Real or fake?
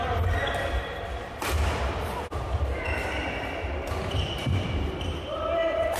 real